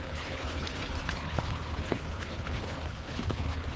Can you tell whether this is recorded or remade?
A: remade